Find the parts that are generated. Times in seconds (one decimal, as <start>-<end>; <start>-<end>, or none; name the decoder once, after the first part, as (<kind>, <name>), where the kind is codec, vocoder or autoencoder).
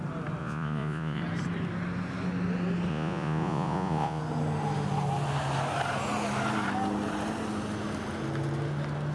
0.4-1.2 (vocoder, Vocos); 2.9-4.2